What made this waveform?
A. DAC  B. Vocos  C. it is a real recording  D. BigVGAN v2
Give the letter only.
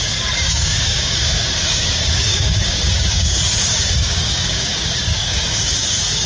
A